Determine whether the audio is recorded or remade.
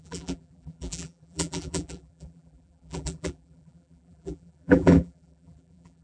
remade